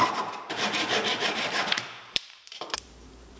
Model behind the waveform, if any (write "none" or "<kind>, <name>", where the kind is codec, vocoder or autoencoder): vocoder, BigVGAN v2